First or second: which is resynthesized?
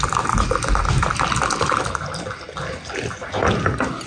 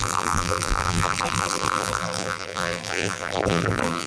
second